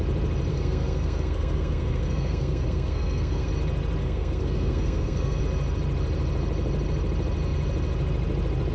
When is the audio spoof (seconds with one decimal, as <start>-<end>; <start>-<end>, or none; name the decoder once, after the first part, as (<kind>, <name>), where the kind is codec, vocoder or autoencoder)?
0.5-3.5 (codec, SNAC); 4.0-5.4